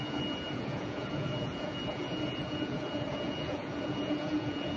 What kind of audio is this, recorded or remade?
remade